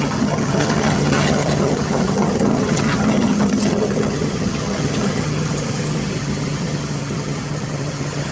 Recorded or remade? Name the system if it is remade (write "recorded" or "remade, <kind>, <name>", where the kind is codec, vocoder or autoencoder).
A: remade, vocoder, HiFi-GAN